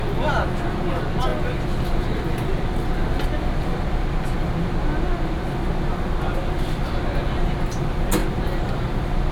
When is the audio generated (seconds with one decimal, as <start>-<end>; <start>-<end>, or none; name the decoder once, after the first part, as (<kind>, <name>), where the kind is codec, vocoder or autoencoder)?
none